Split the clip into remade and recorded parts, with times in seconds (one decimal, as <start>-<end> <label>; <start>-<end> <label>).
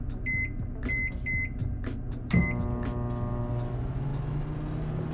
0.0-5.1 recorded